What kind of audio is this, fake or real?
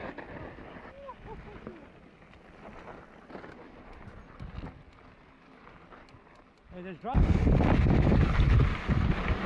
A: real